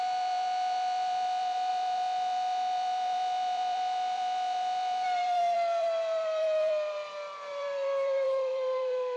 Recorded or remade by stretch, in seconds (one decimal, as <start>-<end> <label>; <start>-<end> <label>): 0.0-9.2 remade